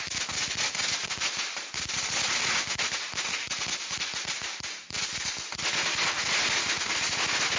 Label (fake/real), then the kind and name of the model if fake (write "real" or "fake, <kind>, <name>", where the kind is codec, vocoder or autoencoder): real